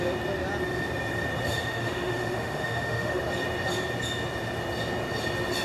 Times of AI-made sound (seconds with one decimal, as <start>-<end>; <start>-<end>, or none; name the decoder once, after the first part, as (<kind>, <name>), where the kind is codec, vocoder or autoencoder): 1.5-3.2 (autoencoder, DAC-VAE)